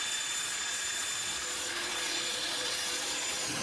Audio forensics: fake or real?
fake